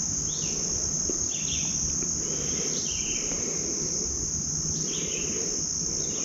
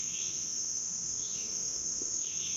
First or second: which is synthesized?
second